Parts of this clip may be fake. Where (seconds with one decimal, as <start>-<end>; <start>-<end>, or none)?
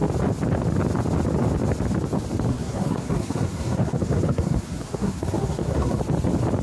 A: 2.5-6.0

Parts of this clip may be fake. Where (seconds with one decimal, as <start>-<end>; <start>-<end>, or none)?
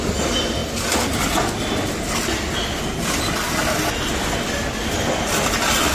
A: none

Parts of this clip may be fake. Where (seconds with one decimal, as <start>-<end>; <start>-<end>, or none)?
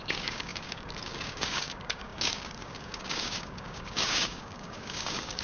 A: 0.0-5.4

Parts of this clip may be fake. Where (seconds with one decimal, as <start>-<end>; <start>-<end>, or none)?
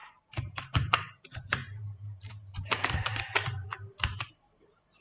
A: 0.5-1.6; 2.3-5.0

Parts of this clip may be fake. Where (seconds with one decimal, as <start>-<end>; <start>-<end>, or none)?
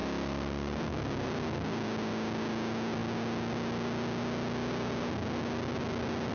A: none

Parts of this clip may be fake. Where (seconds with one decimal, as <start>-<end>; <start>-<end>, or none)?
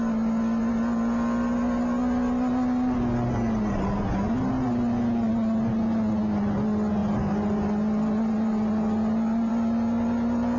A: none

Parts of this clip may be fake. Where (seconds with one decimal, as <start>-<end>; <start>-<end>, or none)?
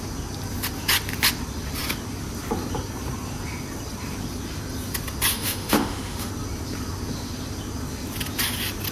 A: 5.3-6.3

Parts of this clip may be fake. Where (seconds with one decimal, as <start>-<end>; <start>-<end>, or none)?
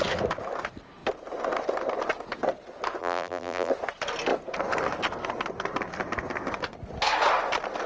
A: 3.0-3.7